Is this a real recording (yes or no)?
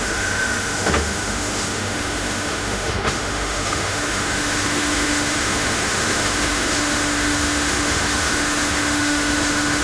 no